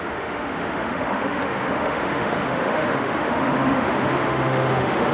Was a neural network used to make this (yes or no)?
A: yes